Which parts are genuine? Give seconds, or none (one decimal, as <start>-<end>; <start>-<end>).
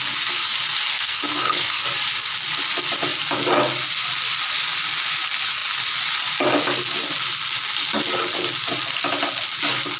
0.0-0.9; 1.8-10.0